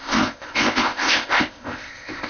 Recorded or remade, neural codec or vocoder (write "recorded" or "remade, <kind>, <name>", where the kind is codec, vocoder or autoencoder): remade, codec, ZipCodec